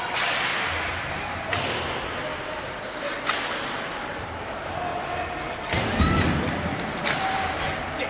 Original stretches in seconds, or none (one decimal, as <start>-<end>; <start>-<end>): 0.0-8.1